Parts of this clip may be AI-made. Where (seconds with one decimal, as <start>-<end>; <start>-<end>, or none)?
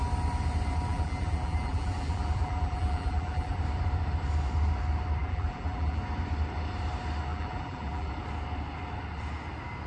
0.9-3.6; 5.2-6.0; 7.3-8.1